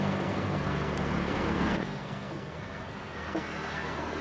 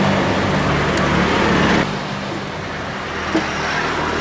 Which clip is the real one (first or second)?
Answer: second